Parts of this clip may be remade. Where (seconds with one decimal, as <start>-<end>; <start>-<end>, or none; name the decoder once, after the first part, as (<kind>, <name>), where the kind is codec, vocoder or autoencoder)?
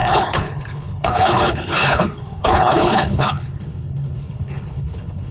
0.0-5.3 (codec, HILCodec)